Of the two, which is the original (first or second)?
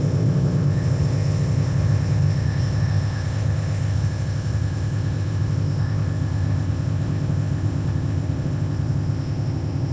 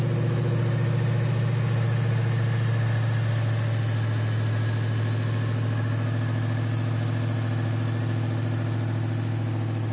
second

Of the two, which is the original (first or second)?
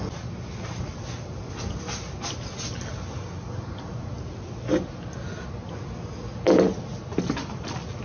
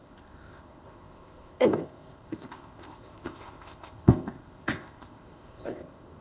first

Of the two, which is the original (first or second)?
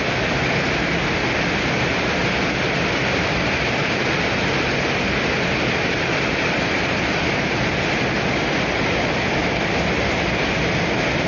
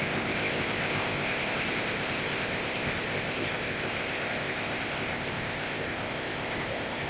first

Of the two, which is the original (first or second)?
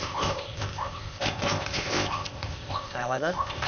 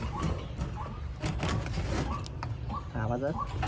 second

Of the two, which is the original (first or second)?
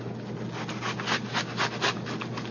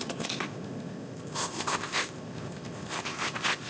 first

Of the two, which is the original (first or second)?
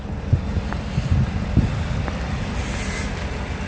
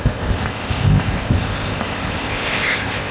first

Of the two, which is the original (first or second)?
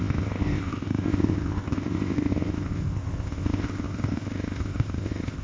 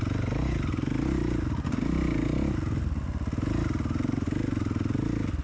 second